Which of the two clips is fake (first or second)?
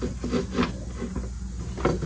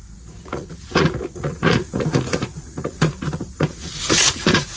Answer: second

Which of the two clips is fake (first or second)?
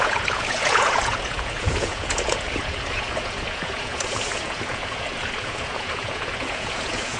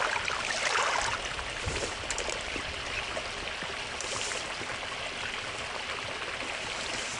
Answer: first